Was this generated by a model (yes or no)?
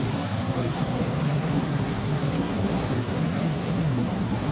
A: yes